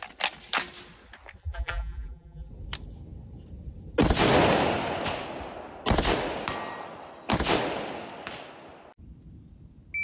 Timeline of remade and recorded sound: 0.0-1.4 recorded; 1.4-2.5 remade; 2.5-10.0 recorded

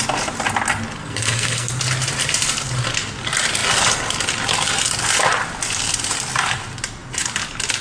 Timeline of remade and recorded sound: 0.0-1.0 recorded; 1.0-1.7 remade; 1.7-7.8 recorded

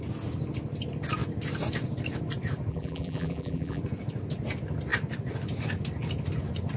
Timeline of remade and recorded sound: 0.0-2.7 recorded; 2.7-3.8 remade; 3.8-6.8 recorded

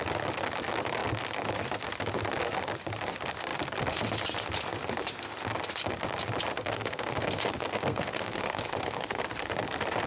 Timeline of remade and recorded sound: 0.0-6.6 recorded; 6.6-9.2 remade; 9.2-10.1 recorded

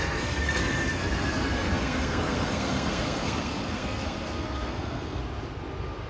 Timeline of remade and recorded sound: 0.0-5.2 remade; 5.2-6.1 recorded

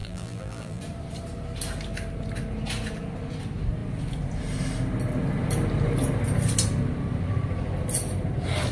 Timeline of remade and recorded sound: 0.0-0.8 remade; 0.8-8.7 recorded